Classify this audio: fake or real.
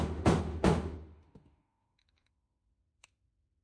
fake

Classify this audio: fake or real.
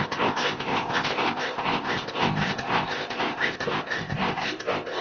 fake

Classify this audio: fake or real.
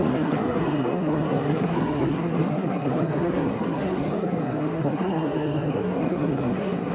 fake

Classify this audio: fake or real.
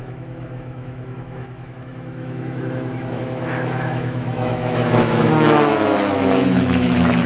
fake